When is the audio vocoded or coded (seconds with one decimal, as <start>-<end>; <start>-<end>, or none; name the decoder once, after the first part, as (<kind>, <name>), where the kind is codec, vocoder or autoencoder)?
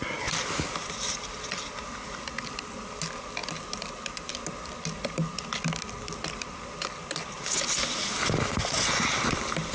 none